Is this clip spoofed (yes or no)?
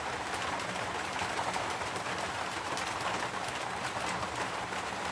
yes